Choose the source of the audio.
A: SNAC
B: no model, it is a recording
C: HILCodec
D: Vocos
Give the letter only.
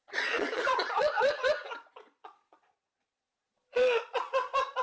D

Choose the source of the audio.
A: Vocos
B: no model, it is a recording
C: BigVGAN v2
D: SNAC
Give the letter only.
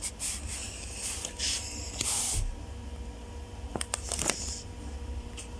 B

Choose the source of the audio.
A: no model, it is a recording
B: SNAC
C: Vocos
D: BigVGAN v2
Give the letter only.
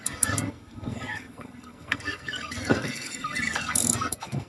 B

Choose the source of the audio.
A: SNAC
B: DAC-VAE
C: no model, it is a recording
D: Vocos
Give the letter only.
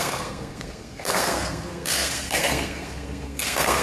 A